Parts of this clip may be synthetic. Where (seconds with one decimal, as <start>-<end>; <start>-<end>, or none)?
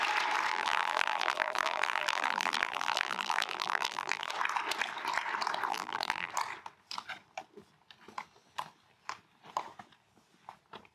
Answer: 0.5-4.3; 5.7-6.3